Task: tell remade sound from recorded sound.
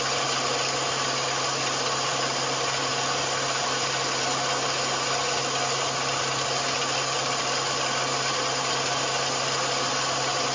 recorded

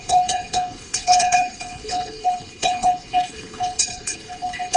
remade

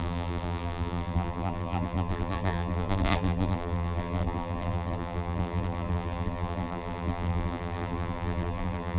remade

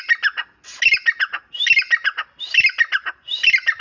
recorded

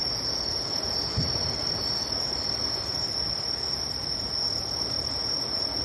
recorded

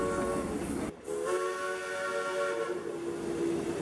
recorded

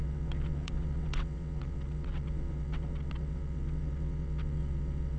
remade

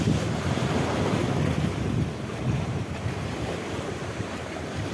remade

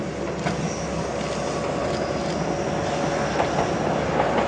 recorded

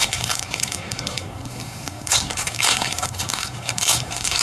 remade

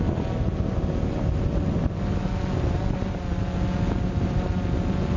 recorded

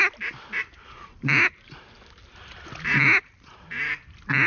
recorded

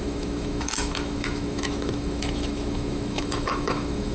remade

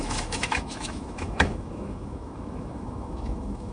remade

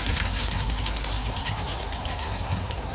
remade